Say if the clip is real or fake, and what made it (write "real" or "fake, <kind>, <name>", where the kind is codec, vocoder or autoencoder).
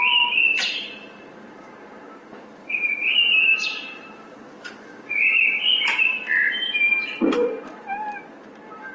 fake, vocoder, BigVGAN v2